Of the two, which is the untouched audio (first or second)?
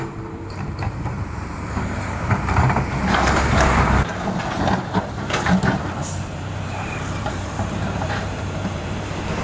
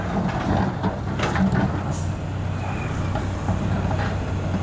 second